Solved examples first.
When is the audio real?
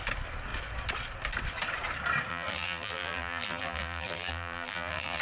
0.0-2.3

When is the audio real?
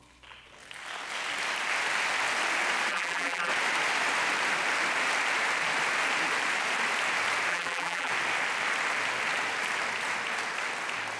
0.0-2.9; 3.5-7.5; 8.1-11.2